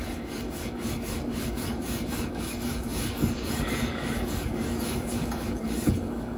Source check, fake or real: fake